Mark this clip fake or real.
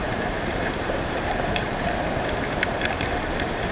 fake